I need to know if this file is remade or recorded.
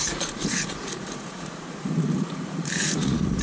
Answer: remade